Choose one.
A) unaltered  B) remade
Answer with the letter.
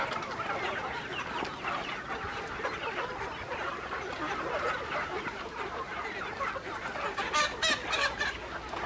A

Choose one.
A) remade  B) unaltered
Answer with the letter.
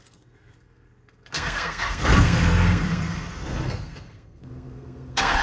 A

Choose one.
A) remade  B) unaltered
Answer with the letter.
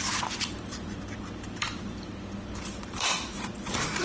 A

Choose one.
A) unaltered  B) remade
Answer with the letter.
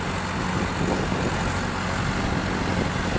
A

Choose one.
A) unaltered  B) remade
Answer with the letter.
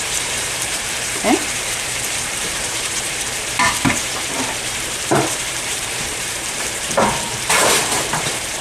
B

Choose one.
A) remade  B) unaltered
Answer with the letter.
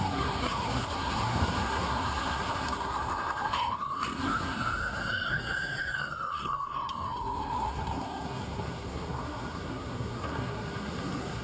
A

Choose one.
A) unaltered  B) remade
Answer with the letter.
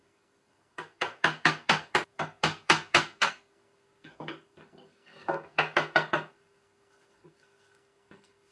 B